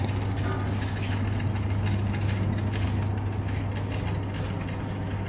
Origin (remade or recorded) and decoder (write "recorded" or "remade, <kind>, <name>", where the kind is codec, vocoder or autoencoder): recorded